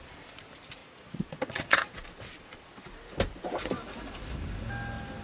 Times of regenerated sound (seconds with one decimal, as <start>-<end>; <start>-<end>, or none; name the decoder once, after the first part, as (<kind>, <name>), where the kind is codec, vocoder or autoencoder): 0.8-2.7 (vocoder, Vocos)